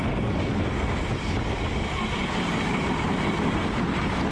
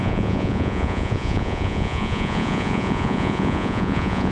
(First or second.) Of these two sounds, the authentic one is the first